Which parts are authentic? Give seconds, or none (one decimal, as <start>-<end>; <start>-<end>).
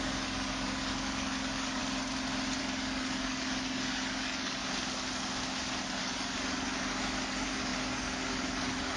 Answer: 1.8-2.6; 4.6-6.0